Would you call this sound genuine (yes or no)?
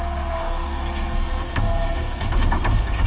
no